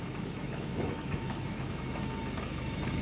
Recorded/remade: remade